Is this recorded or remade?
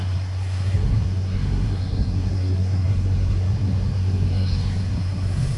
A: remade